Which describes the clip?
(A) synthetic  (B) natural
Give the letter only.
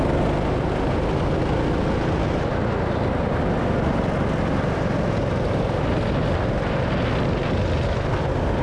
B